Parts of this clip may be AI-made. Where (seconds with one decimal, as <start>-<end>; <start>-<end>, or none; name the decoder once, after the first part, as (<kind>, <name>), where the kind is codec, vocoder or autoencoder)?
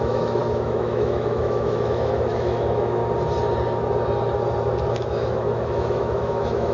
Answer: 0.0-3.0 (autoencoder, DAC-VAE); 4.9-6.7